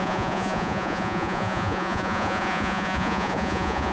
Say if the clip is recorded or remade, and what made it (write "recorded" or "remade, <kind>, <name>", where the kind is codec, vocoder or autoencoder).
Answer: remade, vocoder, Vocos